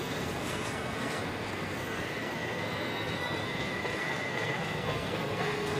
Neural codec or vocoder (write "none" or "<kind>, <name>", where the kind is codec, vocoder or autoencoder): codec, SNAC